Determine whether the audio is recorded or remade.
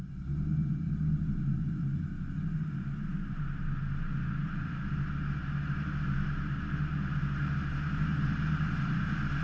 recorded